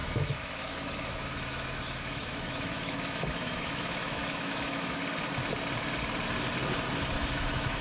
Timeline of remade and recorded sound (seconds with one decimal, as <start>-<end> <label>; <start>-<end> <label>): 0.0-5.0 remade; 5.0-7.0 recorded; 7.0-7.8 remade